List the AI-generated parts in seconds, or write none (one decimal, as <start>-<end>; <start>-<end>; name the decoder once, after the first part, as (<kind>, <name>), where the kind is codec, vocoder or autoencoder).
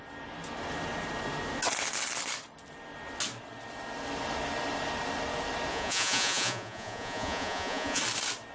5.7-8.0 (vocoder, Vocos)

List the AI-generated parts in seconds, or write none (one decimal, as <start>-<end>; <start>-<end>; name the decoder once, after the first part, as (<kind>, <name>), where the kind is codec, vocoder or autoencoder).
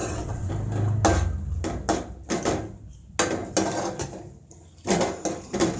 0.0-0.5 (vocoder, WaveNeXt)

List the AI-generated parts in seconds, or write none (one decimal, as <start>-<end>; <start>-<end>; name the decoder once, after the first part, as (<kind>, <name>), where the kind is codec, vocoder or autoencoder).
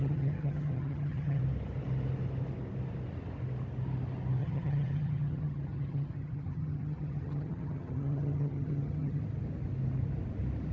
0.0-1.4 (vocoder, HiFi-GAN); 4.4-9.2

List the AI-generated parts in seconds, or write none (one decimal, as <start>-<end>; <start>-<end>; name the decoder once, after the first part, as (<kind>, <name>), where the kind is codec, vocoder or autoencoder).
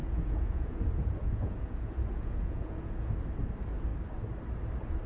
0.0-3.1 (vocoder, Vocos)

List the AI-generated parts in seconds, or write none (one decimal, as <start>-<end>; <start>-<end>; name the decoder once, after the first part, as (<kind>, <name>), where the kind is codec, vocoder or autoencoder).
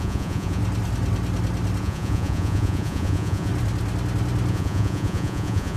0.0-0.6 (vocoder, Vocos); 1.8-3.5; 4.5-5.8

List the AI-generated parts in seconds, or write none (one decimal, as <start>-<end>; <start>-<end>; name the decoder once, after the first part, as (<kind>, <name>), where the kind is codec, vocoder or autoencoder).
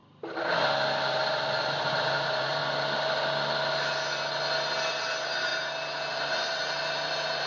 1.0-2.6 (vocoder, BigVGAN v2); 4.9-5.5; 6.1-7.5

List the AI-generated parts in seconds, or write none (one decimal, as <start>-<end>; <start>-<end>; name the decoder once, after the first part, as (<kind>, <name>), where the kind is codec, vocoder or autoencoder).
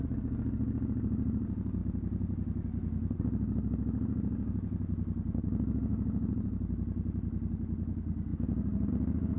none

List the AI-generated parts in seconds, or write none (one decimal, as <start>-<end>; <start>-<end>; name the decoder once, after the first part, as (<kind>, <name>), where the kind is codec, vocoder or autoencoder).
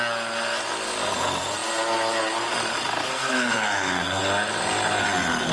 3.1-4.2 (codec, SNAC)